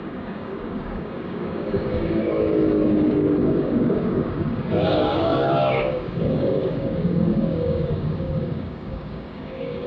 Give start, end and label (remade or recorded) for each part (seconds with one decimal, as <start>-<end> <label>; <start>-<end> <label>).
0.0-9.9 remade